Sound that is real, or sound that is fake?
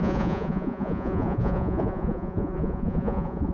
fake